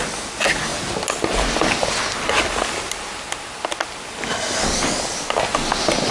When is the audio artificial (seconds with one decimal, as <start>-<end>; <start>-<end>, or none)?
none